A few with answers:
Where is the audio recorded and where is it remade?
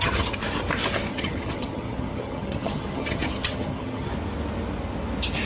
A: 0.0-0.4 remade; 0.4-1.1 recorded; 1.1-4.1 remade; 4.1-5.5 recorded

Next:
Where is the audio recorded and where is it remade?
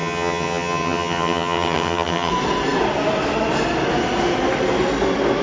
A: 0.0-2.3 remade; 2.3-5.4 recorded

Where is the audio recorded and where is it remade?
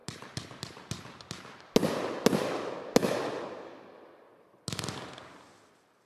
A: 0.0-6.1 recorded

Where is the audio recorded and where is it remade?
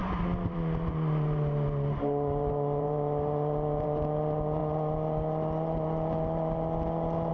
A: 0.0-4.6 remade; 4.6-7.3 recorded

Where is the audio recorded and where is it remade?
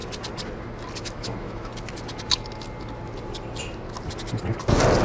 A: 0.0-1.0 recorded; 1.0-1.7 remade; 1.7-5.0 recorded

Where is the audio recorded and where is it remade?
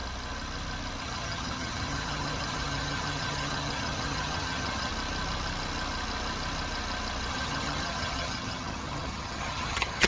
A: 0.0-1.0 recorded; 1.0-4.9 remade; 4.9-7.3 recorded; 7.3-10.1 remade